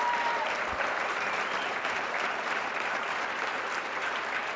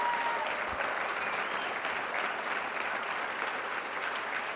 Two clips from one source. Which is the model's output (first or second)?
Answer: first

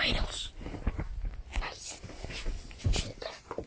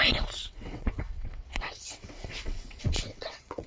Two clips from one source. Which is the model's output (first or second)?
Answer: second